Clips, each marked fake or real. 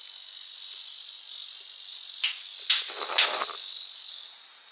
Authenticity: real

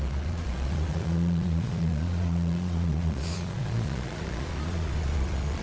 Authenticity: fake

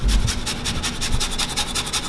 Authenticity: real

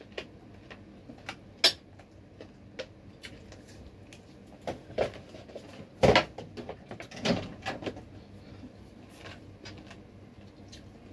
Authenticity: real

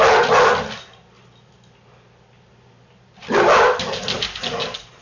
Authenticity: real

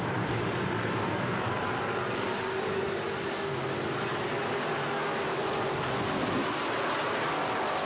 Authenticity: real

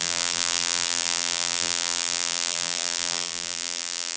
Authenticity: fake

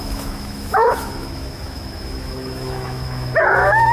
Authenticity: fake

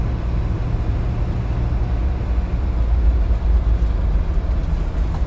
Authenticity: real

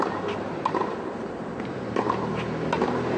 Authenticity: real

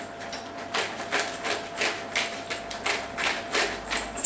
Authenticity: real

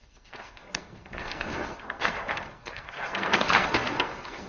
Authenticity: fake